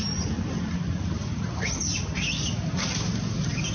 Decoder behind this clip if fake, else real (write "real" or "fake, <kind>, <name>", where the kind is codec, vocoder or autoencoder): real